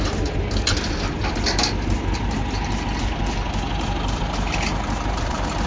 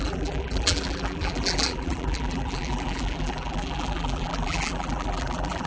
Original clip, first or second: first